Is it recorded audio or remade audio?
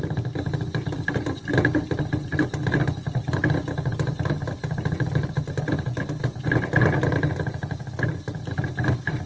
recorded